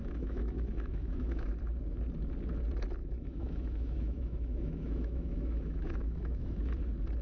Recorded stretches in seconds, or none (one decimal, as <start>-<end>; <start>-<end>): 1.5-3.0; 6.6-7.2